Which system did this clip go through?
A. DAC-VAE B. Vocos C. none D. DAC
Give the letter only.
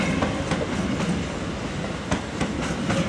C